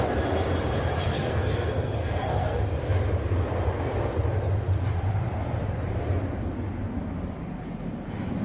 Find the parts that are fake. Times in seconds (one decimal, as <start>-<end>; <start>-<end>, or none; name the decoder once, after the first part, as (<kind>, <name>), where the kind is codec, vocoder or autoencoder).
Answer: 1.1-2.6 (codec, SNAC)